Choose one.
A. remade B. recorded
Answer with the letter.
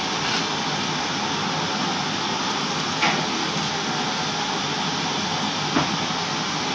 B